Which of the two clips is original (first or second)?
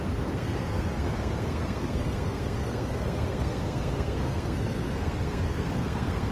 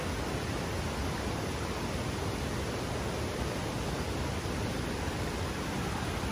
second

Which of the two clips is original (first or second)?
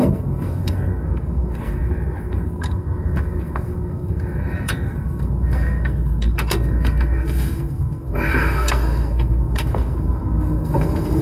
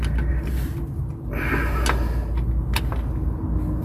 second